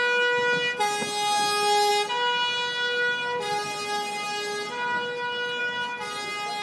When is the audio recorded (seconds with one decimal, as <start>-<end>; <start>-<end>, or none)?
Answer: 0.0-6.6